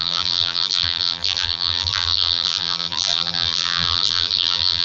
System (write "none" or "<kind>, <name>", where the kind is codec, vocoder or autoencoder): vocoder, BigVGAN v2